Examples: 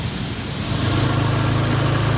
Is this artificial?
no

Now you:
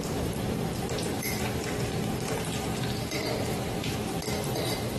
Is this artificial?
yes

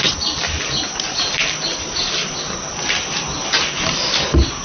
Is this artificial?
no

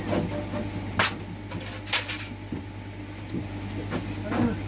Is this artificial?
no